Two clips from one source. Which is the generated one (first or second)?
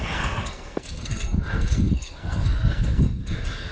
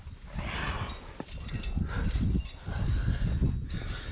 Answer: first